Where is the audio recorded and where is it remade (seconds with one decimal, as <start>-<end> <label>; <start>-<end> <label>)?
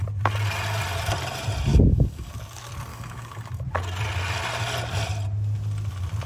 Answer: 0.0-1.7 recorded; 1.7-2.3 remade; 2.3-2.9 recorded; 2.9-3.5 remade; 3.5-6.3 recorded